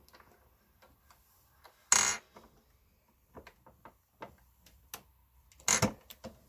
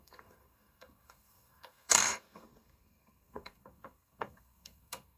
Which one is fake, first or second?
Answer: second